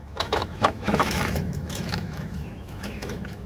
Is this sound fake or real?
fake